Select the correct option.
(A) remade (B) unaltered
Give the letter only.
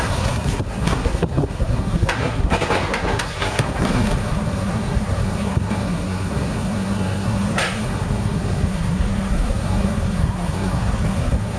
A